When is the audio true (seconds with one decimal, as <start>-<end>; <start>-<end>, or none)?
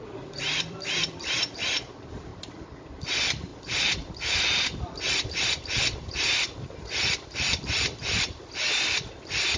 2.3-3.0